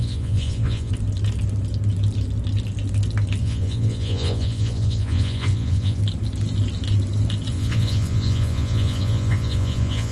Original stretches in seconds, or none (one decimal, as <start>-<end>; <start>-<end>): 0.9-3.4; 6.0-7.5